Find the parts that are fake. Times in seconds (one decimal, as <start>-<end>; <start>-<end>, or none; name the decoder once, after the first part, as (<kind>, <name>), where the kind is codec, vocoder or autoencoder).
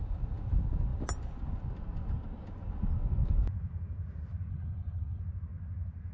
4.5-5.2 (codec, HILCodec)